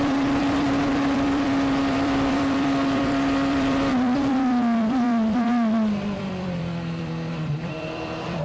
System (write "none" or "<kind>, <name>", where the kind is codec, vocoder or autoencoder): vocoder, BigVGAN v2